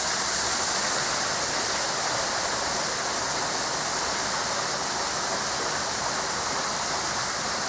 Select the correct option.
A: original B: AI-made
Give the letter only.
A